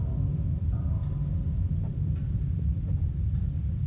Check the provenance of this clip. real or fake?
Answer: real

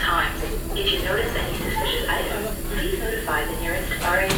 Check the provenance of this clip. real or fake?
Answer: real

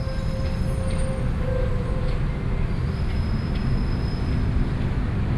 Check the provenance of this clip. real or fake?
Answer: real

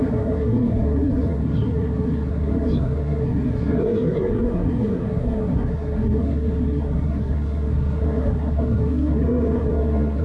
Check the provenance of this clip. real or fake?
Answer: fake